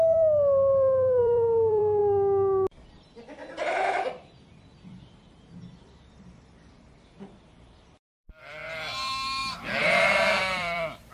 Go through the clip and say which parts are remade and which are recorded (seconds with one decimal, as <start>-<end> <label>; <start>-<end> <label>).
0.0-2.0 remade; 2.0-2.9 recorded; 2.9-3.4 remade; 3.4-4.1 recorded; 4.1-11.1 remade